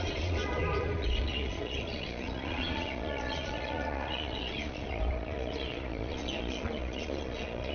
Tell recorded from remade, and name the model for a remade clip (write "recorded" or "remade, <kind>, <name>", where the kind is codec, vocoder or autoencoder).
remade, vocoder, Vocos